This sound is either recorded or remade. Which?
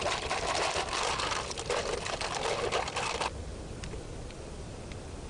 recorded